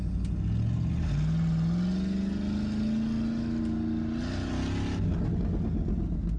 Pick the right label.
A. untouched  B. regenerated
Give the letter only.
A